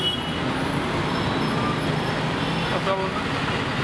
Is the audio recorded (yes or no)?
yes